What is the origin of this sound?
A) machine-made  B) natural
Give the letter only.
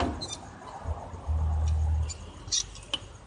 B